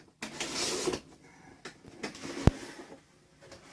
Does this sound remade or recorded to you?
recorded